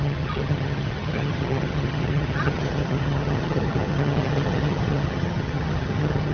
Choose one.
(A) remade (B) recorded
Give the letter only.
A